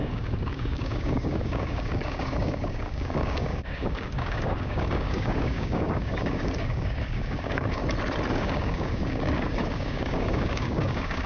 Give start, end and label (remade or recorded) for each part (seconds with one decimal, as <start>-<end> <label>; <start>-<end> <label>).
0.0-7.8 remade; 7.8-8.3 recorded; 8.3-11.3 remade